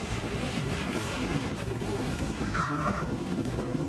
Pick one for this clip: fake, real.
fake